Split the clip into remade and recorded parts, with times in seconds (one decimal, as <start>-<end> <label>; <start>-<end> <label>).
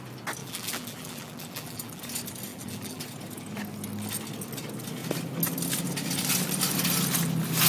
0.0-0.4 recorded; 0.4-2.0 remade; 2.0-2.5 recorded; 2.5-3.0 remade; 3.0-7.7 recorded